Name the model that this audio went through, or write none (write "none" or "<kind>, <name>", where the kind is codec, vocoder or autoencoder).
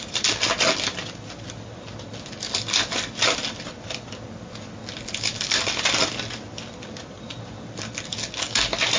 none